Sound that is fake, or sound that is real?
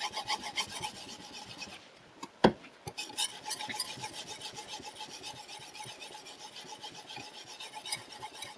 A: real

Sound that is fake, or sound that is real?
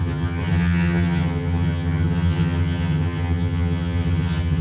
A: fake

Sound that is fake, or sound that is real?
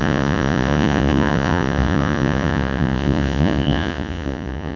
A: fake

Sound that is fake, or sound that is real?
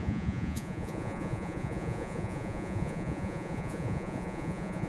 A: fake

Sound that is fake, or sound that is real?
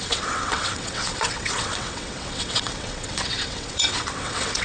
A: fake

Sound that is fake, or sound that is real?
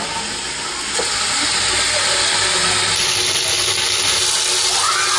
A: real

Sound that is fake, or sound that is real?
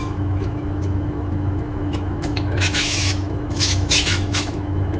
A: fake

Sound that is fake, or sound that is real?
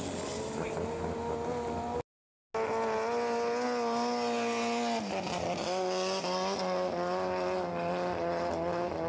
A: real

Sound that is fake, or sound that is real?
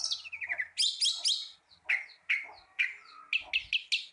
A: real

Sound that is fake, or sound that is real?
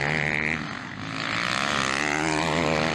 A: real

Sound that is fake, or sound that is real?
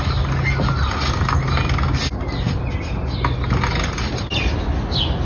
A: real